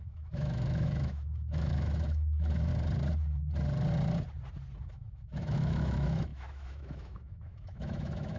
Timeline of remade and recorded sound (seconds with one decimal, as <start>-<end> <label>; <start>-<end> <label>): 0.0-2.7 remade; 2.7-4.8 recorded; 4.8-8.4 remade